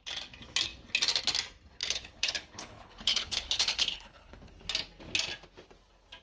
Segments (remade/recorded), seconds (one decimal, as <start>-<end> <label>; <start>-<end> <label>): 0.0-1.8 recorded; 1.8-4.5 remade; 4.5-6.2 recorded